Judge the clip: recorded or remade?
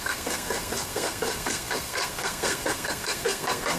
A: remade